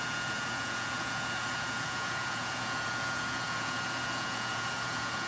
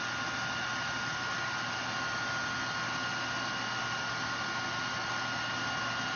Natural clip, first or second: second